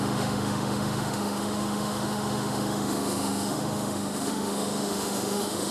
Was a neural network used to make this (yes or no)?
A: yes